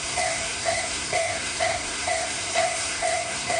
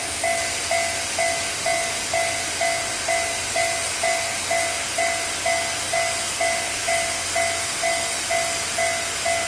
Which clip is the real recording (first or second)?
second